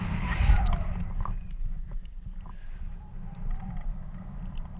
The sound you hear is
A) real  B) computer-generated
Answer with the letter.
A